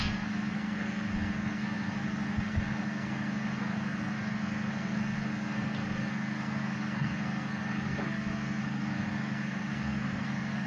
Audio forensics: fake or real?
fake